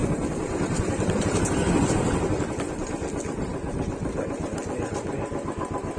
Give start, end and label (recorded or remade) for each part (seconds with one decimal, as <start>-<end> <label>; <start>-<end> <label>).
0.0-6.0 recorded